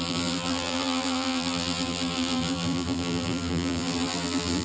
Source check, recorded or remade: remade